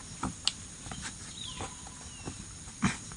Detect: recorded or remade recorded